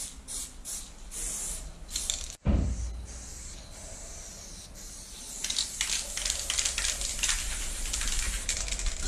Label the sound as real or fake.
real